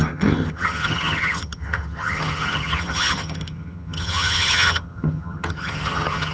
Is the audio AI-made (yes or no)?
yes